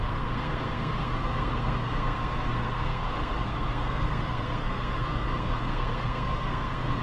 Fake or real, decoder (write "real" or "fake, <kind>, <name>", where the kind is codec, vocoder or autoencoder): fake, codec, SNAC